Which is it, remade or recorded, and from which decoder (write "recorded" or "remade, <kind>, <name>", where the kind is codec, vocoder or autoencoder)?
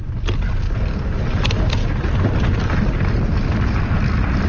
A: recorded